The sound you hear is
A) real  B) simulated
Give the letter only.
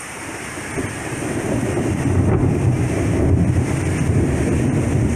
A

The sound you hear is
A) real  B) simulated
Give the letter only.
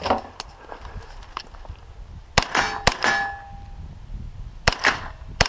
A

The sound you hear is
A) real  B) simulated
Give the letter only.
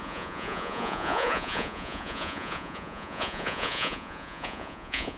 B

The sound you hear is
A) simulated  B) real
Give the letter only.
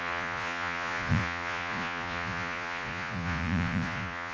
A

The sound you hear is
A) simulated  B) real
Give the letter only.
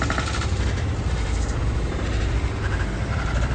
A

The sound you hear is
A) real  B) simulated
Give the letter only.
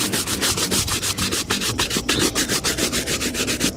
B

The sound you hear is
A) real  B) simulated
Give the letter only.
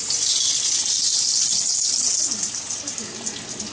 A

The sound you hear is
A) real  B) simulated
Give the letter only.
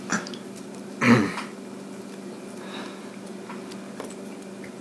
A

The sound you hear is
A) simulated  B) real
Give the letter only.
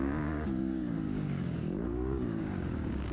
A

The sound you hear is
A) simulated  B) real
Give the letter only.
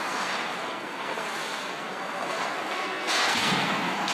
A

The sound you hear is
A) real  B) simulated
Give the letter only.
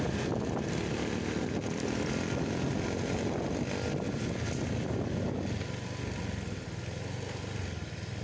A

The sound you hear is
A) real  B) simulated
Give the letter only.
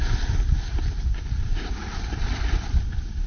B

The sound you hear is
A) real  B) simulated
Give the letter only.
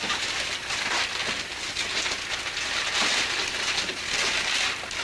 A